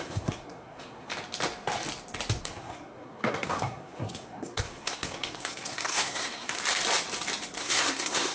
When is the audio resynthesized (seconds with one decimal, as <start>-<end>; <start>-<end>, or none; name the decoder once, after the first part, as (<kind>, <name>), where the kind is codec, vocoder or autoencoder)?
0.0-1.1 (codec, SNAC); 2.4-6.6; 7.6-8.3